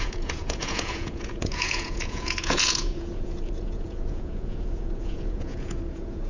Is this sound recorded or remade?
remade